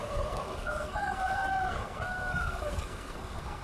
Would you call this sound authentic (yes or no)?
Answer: no